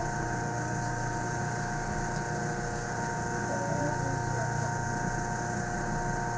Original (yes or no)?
yes